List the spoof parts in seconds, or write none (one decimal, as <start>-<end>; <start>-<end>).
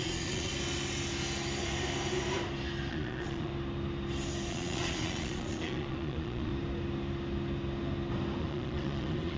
0.0-0.5; 2.9-3.5; 4.5-6.5; 8.4-9.4